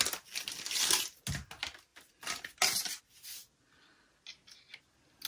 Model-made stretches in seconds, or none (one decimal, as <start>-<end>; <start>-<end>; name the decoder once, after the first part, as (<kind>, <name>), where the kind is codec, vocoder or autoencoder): none